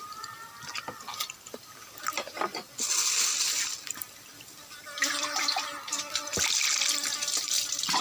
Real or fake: real